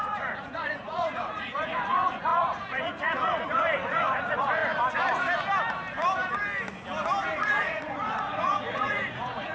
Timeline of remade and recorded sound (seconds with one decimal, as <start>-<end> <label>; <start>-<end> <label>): 0.0-4.6 remade; 4.6-7.4 recorded; 7.4-9.5 remade